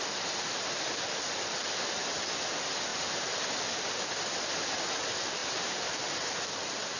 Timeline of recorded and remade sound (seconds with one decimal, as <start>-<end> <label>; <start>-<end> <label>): 0.0-7.0 recorded